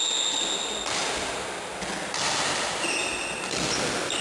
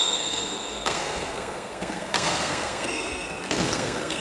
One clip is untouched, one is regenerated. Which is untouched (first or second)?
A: first